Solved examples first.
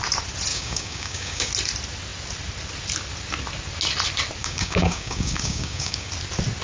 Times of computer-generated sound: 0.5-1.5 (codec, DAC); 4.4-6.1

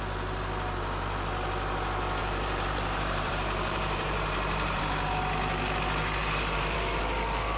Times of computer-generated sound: 2.2-4.8 (vocoder, BigVGAN v2); 6.2-7.0